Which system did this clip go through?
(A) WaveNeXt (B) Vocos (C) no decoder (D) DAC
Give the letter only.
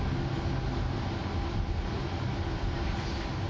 C